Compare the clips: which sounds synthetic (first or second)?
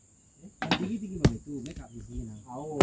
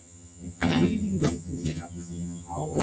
second